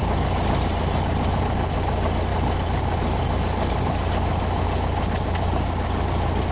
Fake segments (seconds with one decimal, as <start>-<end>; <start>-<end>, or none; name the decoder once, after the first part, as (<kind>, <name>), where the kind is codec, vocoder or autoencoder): none

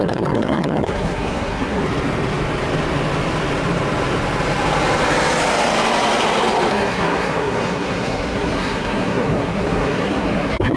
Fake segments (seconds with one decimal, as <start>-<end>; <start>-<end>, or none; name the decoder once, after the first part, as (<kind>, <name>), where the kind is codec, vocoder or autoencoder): 0.0-1.8 (codec, SNAC); 6.7-10.8

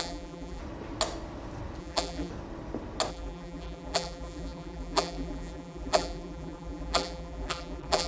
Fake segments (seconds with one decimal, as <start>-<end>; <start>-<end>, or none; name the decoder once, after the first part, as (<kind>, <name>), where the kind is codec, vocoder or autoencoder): 0.0-0.6 (vocoder, BigVGAN v2); 1.8-2.3; 3.1-8.1

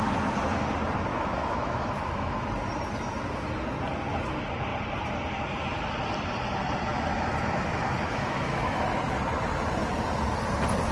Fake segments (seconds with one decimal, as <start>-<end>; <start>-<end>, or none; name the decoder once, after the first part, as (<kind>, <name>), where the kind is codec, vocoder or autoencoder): 1.1-2.5 (autoencoder, DAC-VAE); 6.9-9.0